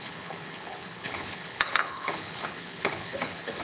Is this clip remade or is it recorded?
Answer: remade